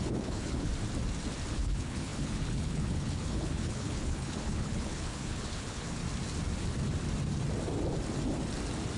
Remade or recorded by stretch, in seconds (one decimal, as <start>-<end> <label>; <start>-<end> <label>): 0.0-0.7 remade; 0.7-1.5 recorded; 1.5-6.0 remade; 6.0-9.0 recorded